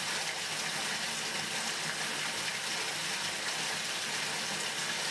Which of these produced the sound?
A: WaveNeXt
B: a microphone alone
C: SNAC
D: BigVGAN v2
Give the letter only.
B